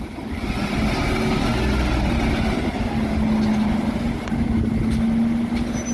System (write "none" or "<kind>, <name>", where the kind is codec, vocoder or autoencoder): none